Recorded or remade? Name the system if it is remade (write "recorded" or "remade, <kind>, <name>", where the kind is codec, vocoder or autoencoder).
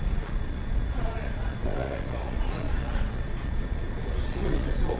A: remade, vocoder, Vocos